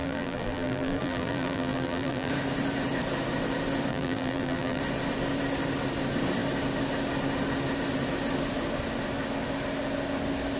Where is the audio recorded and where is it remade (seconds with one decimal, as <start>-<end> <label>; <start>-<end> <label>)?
0.0-2.3 remade; 2.3-3.9 recorded; 3.9-4.8 remade; 4.8-10.6 recorded